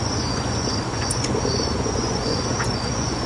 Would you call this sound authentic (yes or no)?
no